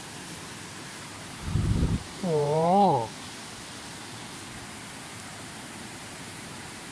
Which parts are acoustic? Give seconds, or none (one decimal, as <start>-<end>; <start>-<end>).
0.0-1.1; 3.1-5.3